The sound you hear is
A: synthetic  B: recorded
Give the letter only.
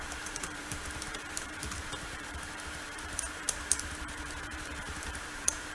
A